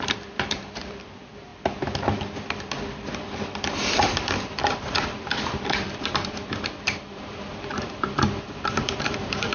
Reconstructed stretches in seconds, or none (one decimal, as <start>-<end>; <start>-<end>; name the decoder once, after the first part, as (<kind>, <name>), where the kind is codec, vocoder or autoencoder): 0.0-1.5 (vocoder, BigVGAN v2); 3.6-9.5

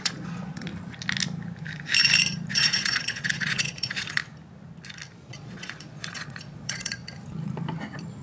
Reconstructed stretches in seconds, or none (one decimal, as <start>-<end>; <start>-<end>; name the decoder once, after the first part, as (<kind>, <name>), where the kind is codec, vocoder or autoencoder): 0.0-0.7 (vocoder, Vocos); 2.5-4.2; 5.3-7.0